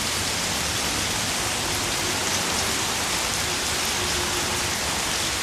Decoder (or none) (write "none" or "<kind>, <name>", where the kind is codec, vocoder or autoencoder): vocoder, BigVGAN v2